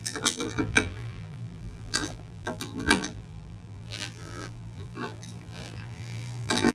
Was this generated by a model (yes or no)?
yes